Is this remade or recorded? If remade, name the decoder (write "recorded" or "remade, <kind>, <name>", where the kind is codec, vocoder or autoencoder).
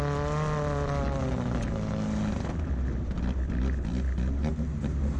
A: recorded